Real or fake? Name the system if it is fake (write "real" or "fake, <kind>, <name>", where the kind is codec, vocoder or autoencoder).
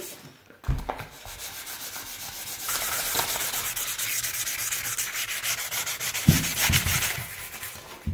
real